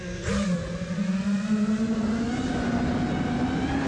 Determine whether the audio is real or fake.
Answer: real